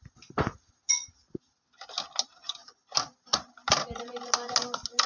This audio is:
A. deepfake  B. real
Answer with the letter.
B